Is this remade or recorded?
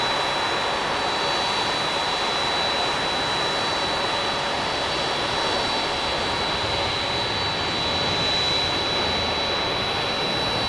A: recorded